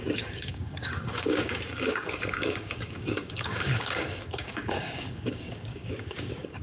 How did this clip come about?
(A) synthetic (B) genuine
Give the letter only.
A